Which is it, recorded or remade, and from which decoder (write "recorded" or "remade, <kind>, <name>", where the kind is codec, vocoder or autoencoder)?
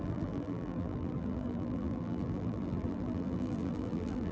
remade, vocoder, BigVGAN v2